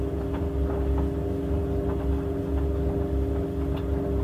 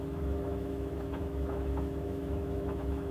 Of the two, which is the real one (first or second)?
first